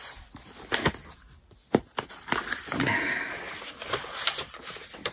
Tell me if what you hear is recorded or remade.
recorded